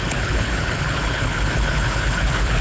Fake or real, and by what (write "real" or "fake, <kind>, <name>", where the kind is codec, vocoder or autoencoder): fake, codec, HILCodec